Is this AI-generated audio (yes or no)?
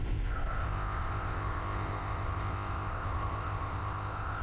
yes